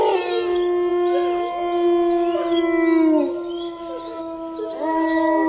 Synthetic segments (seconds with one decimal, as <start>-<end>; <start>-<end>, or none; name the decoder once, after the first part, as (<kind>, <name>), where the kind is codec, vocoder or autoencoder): none